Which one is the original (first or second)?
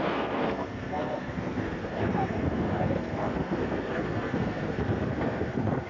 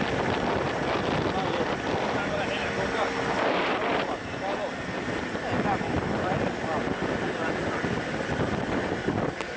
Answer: second